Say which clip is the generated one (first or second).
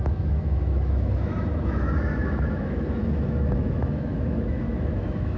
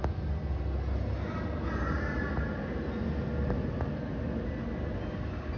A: first